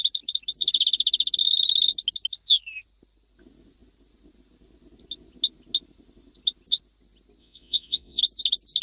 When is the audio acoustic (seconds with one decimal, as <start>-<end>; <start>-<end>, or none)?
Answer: 0.0-7.4; 8.2-8.8